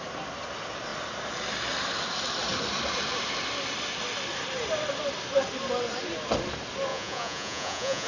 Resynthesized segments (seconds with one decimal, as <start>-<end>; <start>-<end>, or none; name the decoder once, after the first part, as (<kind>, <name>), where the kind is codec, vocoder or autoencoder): 6.9-8.1 (vocoder, Vocos)